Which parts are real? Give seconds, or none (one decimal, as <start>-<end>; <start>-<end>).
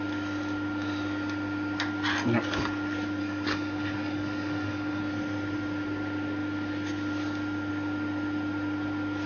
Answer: 0.0-3.2; 5.0-9.3